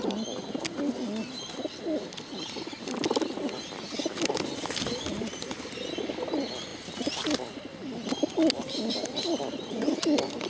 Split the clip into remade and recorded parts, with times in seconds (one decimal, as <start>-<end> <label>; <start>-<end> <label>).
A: 0.0-5.1 recorded; 5.1-5.9 remade; 5.9-10.5 recorded